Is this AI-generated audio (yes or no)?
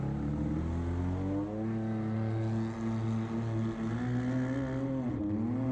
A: no